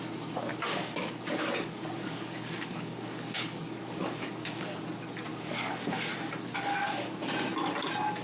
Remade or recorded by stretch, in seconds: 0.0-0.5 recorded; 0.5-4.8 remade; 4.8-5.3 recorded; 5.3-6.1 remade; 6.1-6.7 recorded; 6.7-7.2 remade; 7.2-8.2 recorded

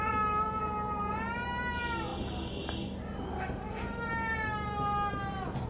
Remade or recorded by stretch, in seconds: 0.0-5.7 recorded

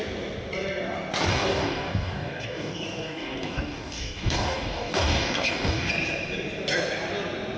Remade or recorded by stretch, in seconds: 0.0-1.3 recorded; 1.3-5.9 remade; 5.9-7.6 recorded

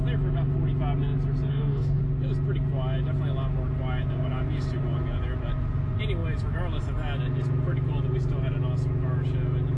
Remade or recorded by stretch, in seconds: 0.0-1.5 recorded; 1.5-2.0 remade; 2.0-9.8 recorded

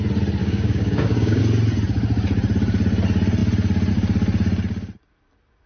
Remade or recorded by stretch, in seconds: 0.0-0.4 recorded; 0.4-1.4 remade; 1.4-5.7 recorded

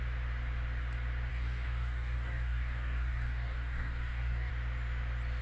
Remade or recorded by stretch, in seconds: 0.0-1.3 recorded; 1.3-4.5 remade; 4.5-5.4 recorded

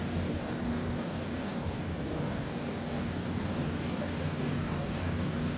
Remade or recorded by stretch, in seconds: 0.0-5.6 remade